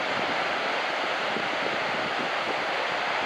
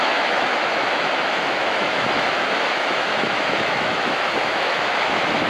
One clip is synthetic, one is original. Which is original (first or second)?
first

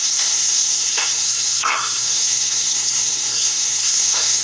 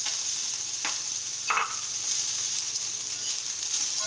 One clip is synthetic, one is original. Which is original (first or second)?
second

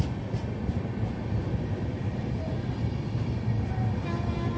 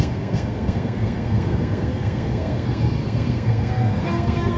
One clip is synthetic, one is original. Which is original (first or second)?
first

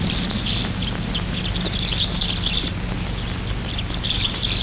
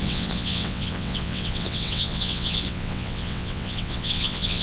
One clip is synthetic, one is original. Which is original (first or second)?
first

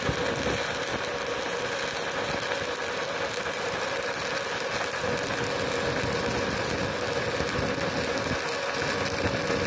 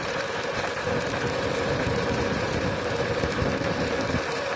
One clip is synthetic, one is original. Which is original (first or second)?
first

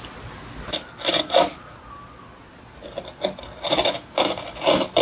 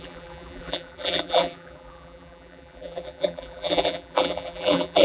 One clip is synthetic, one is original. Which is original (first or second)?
first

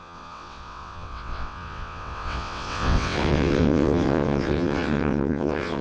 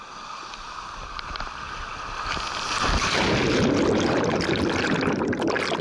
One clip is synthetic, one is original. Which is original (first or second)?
second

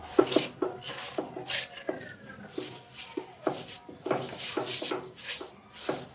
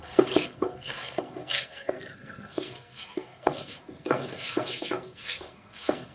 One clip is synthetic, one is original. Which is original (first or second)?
first